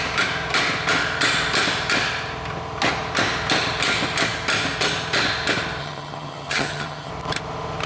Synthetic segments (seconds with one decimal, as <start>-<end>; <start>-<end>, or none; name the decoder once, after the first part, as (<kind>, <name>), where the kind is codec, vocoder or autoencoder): 5.8-7.1 (vocoder, HiFi-GAN)